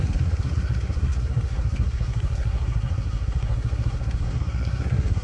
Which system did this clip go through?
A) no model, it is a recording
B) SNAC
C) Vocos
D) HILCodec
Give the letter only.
B